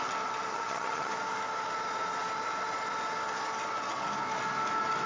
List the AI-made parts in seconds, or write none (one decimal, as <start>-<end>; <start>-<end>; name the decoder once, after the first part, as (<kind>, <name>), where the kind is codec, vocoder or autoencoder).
0.5-1.1 (vocoder, HiFi-GAN)